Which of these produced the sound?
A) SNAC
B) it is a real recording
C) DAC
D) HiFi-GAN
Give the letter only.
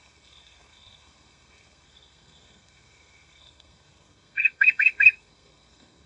A